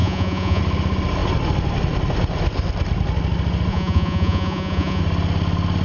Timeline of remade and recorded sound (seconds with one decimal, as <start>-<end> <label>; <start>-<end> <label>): 0.0-0.6 remade; 0.6-3.7 recorded; 3.7-5.0 remade; 5.0-5.8 recorded